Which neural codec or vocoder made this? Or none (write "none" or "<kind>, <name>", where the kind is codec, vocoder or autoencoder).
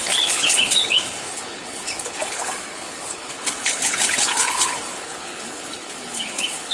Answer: codec, HILCodec